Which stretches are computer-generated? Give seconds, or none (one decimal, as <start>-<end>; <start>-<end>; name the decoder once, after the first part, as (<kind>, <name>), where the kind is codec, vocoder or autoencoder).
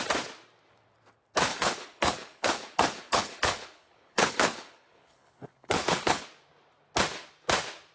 1.5-6.2 (codec, HILCodec)